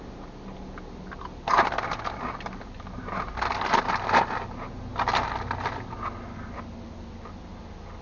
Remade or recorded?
recorded